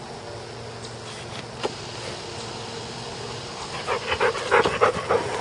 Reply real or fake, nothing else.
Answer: real